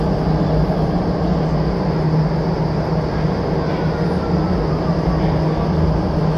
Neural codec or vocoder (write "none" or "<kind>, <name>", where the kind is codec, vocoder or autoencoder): none